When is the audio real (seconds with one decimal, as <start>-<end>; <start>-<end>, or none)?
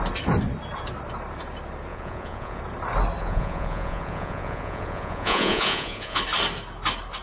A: 0.0-1.9; 2.6-3.2; 6.2-7.2